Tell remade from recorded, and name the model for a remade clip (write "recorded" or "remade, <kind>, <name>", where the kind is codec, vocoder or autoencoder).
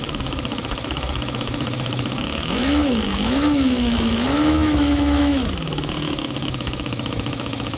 remade, autoencoder, DAC-VAE